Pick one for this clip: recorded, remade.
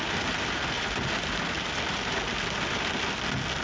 recorded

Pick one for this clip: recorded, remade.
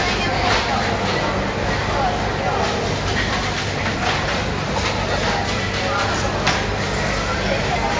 recorded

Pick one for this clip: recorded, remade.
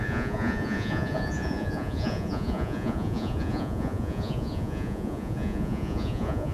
remade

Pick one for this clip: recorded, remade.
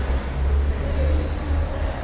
recorded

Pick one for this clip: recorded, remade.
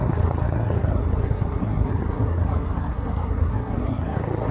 remade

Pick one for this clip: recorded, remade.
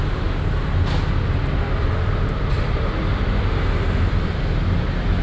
recorded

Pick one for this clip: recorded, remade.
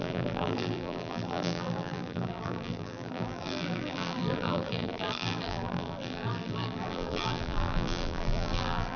remade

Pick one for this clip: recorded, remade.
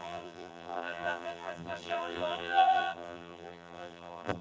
remade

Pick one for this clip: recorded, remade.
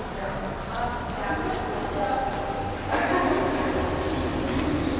recorded